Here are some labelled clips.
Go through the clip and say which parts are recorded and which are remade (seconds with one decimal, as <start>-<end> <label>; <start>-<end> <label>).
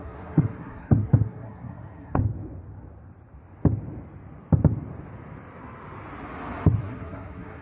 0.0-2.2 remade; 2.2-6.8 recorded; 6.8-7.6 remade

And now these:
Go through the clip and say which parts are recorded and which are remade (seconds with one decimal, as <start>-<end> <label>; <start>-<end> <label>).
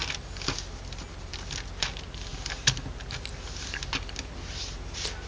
0.0-5.3 recorded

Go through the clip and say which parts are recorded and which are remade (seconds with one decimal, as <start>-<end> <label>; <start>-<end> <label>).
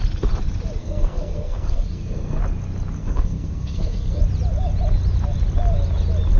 0.0-0.8 recorded; 0.8-2.4 remade; 2.4-3.0 recorded; 3.0-4.2 remade; 4.2-6.4 recorded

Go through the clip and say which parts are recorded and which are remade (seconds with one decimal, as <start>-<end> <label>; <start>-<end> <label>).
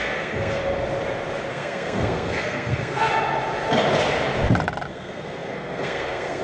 0.0-0.6 remade; 0.6-1.5 recorded; 1.5-3.1 remade; 3.1-4.9 recorded; 4.9-6.4 remade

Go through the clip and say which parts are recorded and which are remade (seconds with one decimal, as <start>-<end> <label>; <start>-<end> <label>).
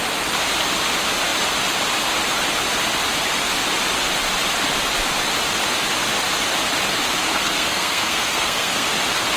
0.0-7.3 recorded; 7.3-8.9 remade; 8.9-9.4 recorded